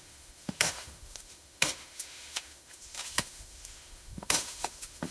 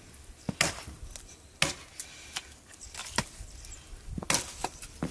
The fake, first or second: first